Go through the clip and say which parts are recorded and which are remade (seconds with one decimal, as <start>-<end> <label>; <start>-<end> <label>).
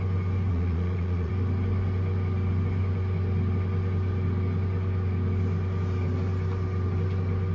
0.0-0.5 recorded; 0.5-1.3 remade; 1.3-7.5 recorded